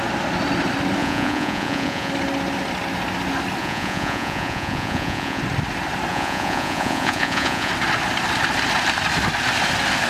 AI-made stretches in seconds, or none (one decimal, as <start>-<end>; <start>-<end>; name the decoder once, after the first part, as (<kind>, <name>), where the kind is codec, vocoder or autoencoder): 1.0-2.1 (vocoder, Vocos); 3.6-5.4; 6.1-7.7